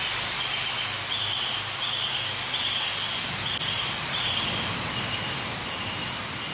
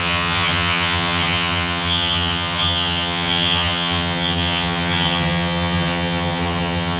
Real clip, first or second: first